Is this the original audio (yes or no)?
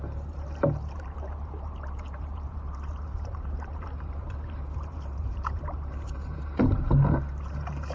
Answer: no